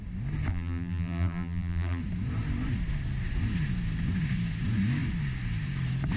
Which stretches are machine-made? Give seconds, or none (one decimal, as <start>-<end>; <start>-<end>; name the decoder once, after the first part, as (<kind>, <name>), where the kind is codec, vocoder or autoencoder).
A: 0.5-2.0 (vocoder, BigVGAN v2)